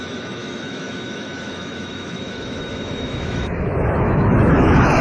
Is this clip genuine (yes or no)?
no